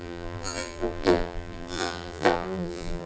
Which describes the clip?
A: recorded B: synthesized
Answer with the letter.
B